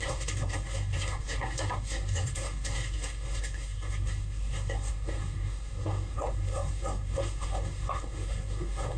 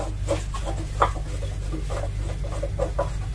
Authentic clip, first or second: second